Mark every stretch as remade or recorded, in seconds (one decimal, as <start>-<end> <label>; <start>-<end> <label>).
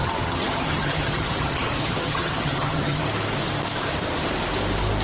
0.0-3.0 remade; 3.0-5.0 recorded